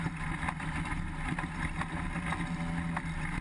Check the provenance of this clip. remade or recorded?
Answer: recorded